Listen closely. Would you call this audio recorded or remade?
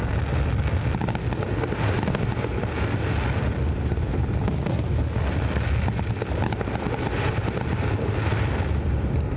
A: recorded